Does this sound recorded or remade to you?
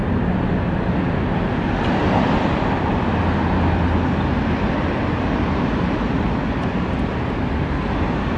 recorded